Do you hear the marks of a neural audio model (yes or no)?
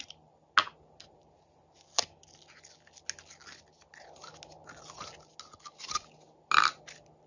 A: no